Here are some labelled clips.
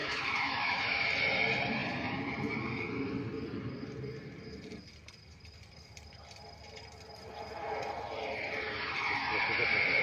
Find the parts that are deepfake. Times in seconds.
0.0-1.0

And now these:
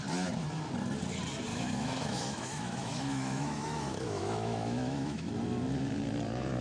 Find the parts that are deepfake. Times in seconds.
1.5-5.3

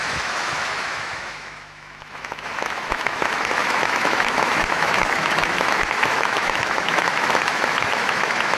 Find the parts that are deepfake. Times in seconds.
0.0-8.6

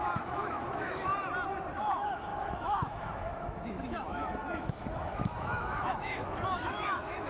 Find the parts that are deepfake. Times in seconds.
0.0-1.1; 1.7-7.3

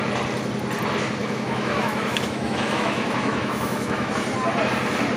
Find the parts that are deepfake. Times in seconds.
1.2-4.1

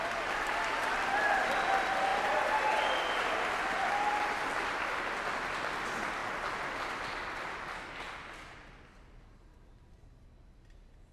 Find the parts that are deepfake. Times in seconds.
none